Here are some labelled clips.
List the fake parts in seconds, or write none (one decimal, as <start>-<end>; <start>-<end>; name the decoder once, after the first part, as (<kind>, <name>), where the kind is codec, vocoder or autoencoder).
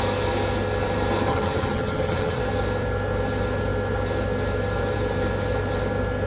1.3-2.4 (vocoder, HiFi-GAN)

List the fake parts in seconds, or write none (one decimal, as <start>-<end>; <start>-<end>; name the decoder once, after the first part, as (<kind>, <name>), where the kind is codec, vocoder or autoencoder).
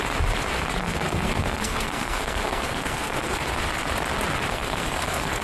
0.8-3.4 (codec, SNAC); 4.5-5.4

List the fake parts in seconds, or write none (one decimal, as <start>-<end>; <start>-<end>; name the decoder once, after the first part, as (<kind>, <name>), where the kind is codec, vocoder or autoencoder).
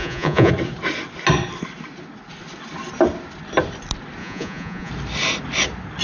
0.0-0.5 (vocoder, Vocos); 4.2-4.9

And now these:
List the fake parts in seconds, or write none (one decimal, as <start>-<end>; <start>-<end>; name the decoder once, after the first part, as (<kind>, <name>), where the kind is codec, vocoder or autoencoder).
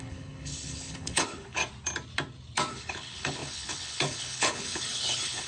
0.0-1.6 (codec, HILCodec); 2.7-5.5